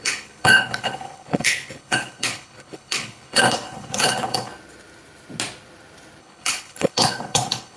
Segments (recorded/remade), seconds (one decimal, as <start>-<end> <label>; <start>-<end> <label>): 0.0-4.5 remade; 4.5-6.2 recorded; 6.2-7.8 remade